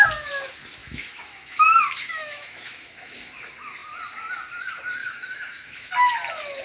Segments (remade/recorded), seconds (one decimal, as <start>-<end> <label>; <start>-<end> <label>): 0.0-0.8 recorded; 0.8-3.3 remade; 3.3-5.0 recorded; 5.0-5.9 remade; 5.9-6.6 recorded